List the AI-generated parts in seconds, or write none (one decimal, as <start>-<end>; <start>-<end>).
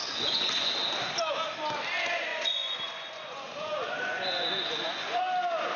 0.0-0.7; 2.3-5.2